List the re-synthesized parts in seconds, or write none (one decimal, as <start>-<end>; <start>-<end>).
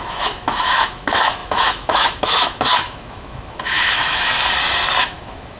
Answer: 0.0-4.3; 5.0-5.6